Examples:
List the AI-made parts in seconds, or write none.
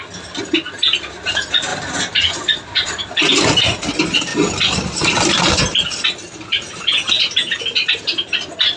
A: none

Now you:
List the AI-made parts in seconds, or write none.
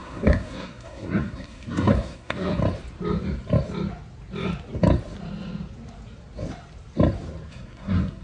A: 0.0-2.6 (codec, SNAC); 7.5-8.2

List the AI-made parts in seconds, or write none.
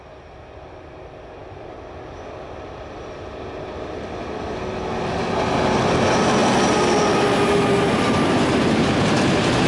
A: none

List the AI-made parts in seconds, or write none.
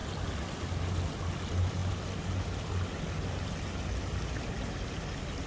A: none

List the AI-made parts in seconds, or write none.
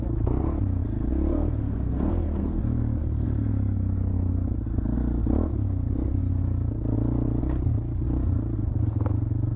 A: 1.3-2.6 (codec, SNAC)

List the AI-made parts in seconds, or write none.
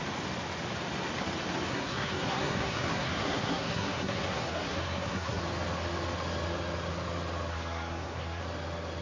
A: 1.7-5.4 (codec, SNAC); 7.5-8.4